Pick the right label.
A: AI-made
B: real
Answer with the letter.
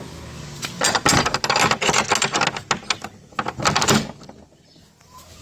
B